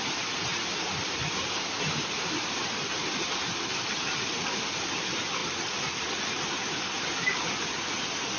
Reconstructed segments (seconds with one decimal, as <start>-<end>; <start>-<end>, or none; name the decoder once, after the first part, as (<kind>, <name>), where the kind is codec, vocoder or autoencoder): 5.4-6.2 (vocoder, BigVGAN v2)